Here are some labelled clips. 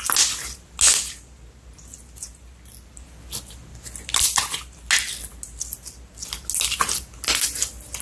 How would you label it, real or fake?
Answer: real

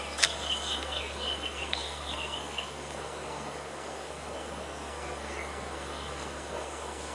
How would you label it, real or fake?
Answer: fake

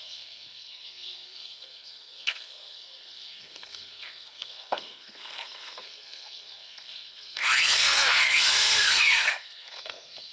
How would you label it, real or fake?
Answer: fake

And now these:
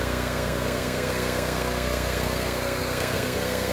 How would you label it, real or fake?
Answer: fake